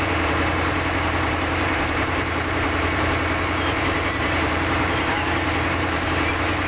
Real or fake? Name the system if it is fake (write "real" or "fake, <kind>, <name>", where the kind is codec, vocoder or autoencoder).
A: fake, vocoder, BigVGAN v2